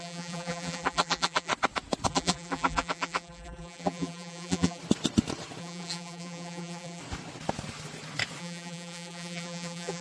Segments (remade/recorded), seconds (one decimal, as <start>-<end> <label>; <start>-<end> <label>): 0.0-1.5 remade; 1.5-2.1 recorded; 2.1-4.8 remade; 4.8-5.6 recorded; 5.6-7.0 remade; 7.0-8.4 recorded; 8.4-10.0 remade